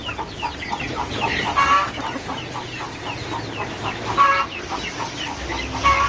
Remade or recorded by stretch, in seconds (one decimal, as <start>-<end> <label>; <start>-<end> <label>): 0.0-6.1 recorded